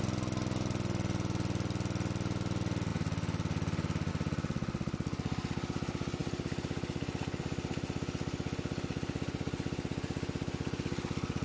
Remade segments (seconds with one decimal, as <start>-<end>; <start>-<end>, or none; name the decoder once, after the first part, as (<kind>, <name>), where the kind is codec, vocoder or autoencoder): none